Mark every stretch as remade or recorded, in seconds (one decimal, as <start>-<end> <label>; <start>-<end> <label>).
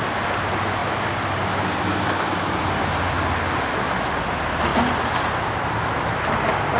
0.0-6.8 recorded